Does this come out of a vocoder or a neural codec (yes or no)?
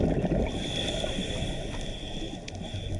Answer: no